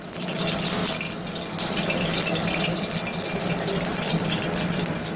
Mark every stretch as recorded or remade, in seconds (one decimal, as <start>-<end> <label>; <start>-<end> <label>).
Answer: 0.0-5.2 recorded